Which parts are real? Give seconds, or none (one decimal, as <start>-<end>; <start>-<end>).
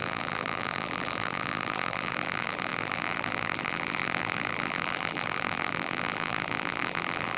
none